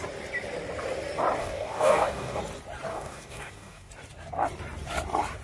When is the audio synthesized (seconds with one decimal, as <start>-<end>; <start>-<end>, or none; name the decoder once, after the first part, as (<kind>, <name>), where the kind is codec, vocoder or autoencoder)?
1.4-2.4 (codec, DAC); 2.9-3.9